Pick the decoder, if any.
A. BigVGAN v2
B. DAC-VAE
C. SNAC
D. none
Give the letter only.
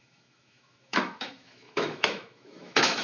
B